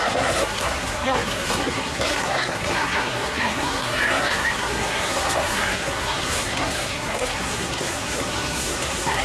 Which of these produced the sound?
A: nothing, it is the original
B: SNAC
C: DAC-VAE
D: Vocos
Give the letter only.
B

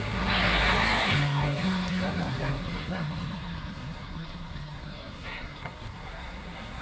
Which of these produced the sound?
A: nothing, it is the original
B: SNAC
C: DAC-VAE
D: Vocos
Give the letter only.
B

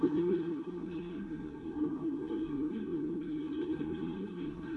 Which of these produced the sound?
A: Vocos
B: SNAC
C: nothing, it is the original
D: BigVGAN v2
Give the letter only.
B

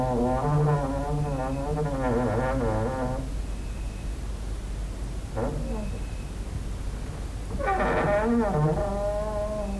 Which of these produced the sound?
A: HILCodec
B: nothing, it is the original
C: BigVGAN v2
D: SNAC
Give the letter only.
B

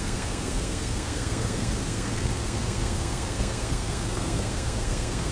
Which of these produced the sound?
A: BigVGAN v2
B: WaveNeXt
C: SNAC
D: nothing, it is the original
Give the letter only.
C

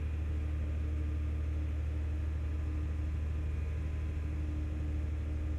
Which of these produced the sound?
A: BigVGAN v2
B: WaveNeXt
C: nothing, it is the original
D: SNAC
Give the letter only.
C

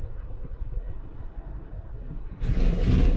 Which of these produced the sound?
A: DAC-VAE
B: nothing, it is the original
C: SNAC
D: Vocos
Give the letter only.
C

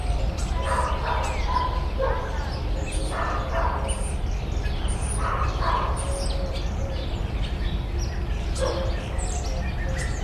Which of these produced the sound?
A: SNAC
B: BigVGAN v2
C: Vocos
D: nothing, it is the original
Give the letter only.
D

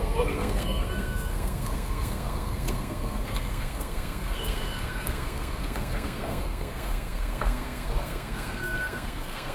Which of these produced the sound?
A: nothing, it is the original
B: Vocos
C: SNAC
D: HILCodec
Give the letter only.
C